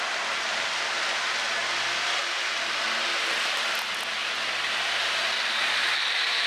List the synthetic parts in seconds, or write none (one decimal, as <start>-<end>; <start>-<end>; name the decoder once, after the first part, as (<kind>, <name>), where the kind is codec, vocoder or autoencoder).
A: 0.0-1.6 (vocoder, BigVGAN v2); 3.4-4.2; 5.8-6.5